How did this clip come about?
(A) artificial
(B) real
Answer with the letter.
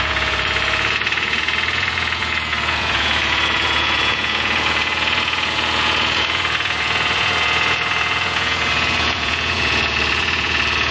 A